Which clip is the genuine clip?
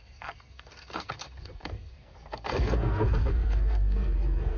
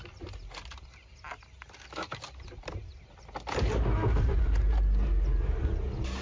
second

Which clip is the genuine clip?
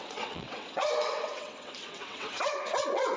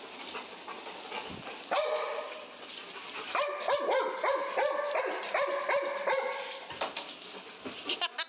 second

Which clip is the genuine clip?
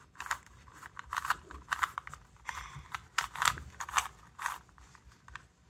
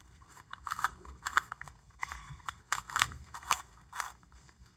first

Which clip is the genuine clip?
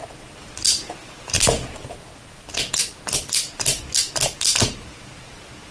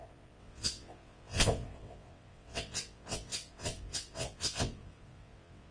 first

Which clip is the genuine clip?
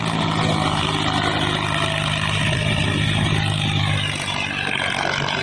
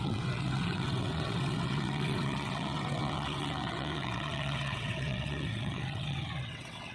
first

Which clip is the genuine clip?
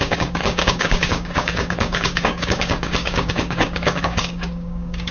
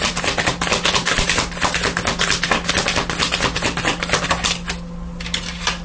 second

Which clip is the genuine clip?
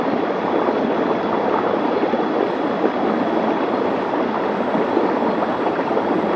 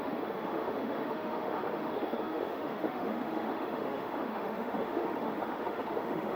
first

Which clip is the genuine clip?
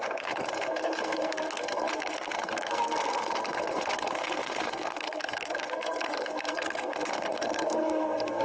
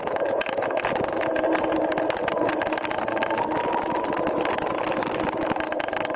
second